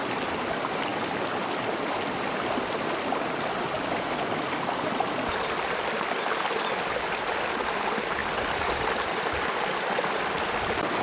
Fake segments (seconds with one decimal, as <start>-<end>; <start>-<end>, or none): none